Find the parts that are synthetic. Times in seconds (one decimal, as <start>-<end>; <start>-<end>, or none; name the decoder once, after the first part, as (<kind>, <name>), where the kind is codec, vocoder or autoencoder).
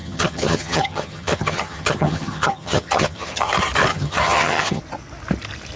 0.0-3.5 (vocoder, HiFi-GAN); 3.9-4.8